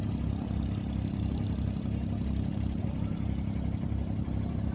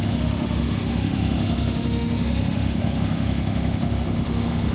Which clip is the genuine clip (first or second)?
first